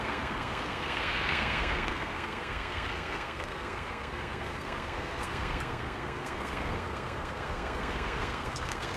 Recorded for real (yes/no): no